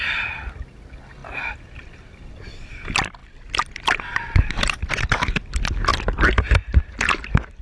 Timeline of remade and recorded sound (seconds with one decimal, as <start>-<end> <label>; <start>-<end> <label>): 0.0-1.2 recorded; 1.2-2.3 remade; 2.3-3.2 recorded; 3.2-4.9 remade; 4.9-5.9 recorded; 5.9-6.8 remade; 6.8-7.6 recorded